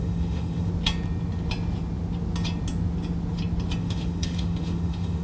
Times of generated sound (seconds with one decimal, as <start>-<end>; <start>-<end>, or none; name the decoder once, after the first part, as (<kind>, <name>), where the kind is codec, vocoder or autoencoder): 0.0-0.7 (autoencoder, DAC-VAE); 3.8-5.2